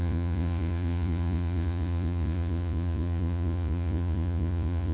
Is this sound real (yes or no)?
no